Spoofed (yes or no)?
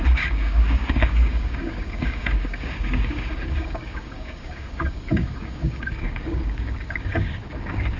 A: yes